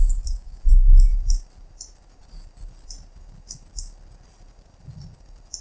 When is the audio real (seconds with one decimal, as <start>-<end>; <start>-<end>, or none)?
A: 0.6-5.6